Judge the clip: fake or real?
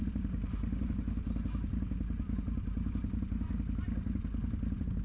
real